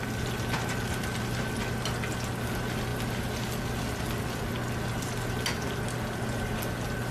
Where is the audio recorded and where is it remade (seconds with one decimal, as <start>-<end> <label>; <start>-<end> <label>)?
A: 0.0-7.1 recorded